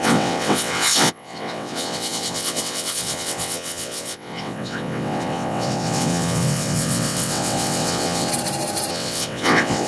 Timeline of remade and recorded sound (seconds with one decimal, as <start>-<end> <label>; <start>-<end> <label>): 0.0-8.3 remade; 8.3-8.9 recorded; 8.9-9.9 remade